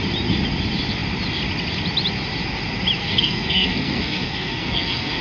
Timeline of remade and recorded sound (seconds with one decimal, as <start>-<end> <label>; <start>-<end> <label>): 0.0-3.0 recorded; 3.0-5.2 remade

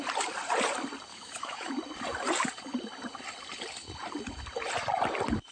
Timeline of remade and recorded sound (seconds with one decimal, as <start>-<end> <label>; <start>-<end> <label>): 0.0-1.1 recorded; 1.1-1.7 remade; 1.7-5.5 recorded